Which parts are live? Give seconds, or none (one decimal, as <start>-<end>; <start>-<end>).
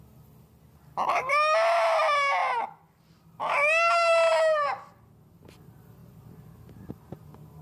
0.0-7.6